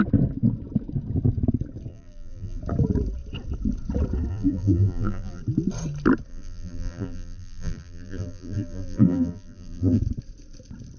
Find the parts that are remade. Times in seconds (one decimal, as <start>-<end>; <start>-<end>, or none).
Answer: 1.9-2.6; 4.3-5.4; 6.3-10.0